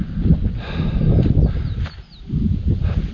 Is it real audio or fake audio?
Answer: real